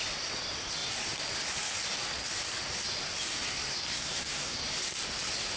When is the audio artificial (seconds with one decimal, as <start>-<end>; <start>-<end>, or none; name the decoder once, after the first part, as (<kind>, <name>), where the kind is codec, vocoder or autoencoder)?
3.9-4.6 (codec, SNAC)